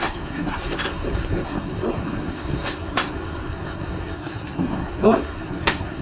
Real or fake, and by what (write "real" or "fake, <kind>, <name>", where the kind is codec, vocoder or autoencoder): fake, codec, SNAC